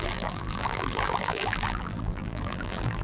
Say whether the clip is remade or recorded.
remade